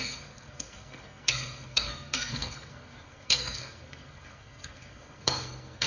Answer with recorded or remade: remade